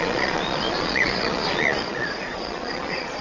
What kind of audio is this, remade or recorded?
remade